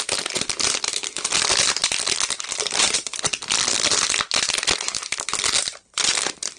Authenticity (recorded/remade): recorded